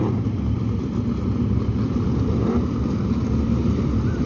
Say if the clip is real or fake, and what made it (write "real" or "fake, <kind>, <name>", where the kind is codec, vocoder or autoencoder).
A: real